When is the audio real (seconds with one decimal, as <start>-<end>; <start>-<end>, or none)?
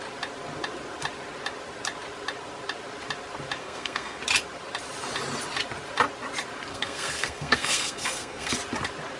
0.0-3.6; 4.2-6.7; 8.5-9.2